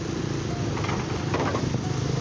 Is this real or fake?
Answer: real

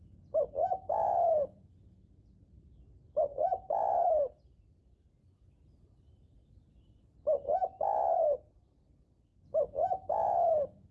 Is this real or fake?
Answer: real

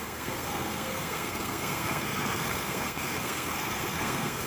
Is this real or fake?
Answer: fake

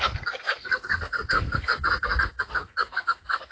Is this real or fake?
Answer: fake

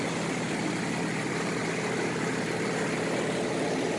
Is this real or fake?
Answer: real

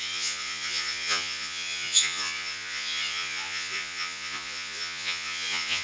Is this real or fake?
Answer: fake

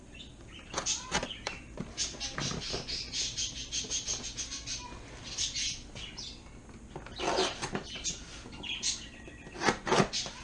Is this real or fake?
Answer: real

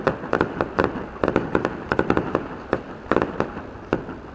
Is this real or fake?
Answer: real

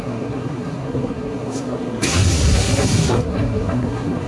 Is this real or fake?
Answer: fake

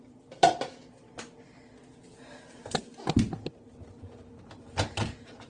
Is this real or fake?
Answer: real